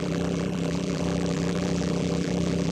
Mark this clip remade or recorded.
remade